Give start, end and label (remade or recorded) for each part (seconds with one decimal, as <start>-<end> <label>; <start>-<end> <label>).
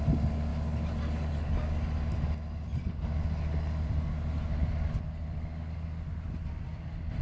0.0-7.2 recorded